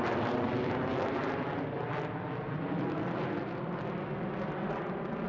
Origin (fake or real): real